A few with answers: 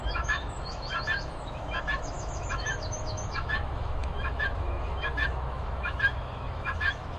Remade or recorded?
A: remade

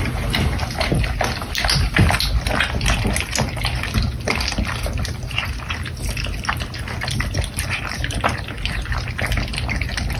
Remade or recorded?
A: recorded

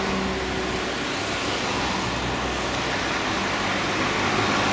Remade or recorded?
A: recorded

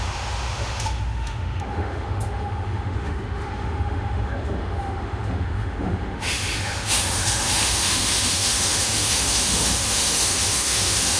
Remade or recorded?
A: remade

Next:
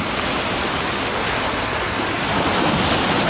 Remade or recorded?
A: recorded